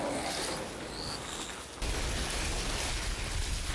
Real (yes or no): yes